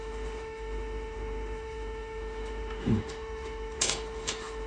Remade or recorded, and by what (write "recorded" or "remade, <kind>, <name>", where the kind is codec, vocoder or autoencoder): remade, autoencoder, DAC-VAE